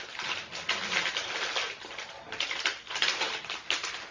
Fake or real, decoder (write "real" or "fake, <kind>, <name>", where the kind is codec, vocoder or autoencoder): real